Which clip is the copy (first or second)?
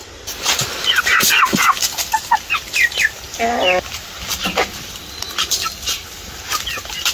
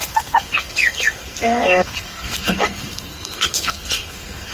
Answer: second